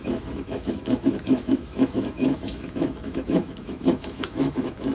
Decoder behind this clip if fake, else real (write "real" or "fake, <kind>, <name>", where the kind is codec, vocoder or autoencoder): fake, autoencoder, DAC-VAE